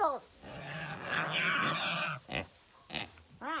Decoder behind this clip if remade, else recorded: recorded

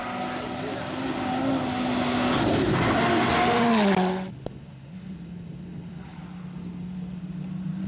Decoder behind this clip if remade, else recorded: recorded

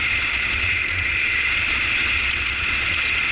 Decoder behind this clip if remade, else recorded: remade, vocoder, Vocos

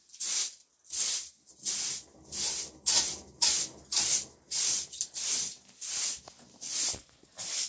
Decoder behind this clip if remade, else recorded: recorded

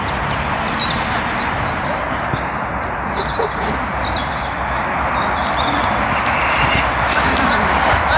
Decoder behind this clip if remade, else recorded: recorded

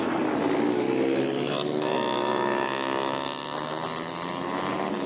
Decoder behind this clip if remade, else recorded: recorded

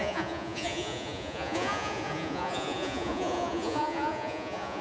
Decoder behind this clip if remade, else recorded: remade, vocoder, Vocos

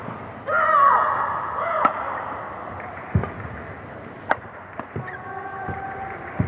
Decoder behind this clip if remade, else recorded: recorded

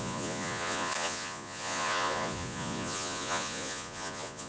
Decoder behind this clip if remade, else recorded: remade, vocoder, Vocos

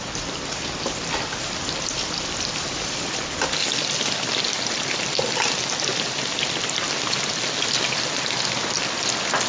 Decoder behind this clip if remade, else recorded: recorded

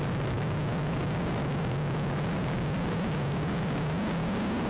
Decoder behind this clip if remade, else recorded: recorded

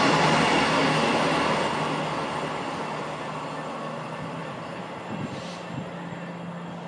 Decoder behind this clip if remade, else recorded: recorded